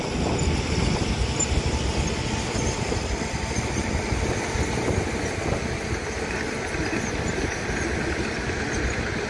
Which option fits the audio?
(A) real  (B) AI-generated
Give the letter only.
A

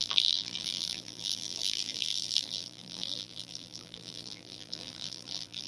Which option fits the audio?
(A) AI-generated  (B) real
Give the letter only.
A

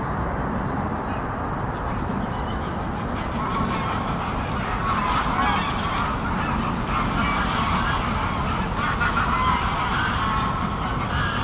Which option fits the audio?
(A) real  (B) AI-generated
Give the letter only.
A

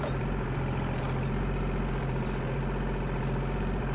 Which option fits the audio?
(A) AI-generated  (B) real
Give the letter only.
A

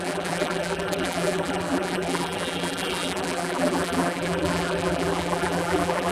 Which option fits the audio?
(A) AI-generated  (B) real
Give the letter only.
A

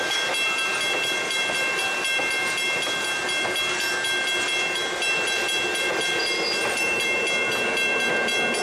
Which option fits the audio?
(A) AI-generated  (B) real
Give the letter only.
B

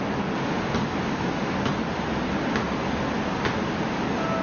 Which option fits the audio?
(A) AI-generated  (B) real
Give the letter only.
B